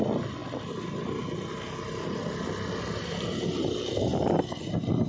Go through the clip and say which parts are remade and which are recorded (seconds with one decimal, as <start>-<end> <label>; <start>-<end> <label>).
0.0-5.1 recorded